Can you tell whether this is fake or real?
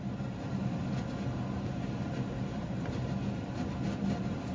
real